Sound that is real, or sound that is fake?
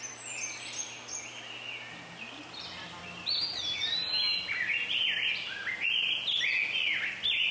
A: real